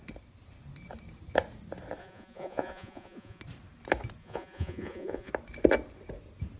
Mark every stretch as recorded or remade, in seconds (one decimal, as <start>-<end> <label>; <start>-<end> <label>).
0.0-2.0 recorded; 2.0-3.4 remade; 3.4-4.2 recorded; 4.2-5.3 remade; 5.3-6.6 recorded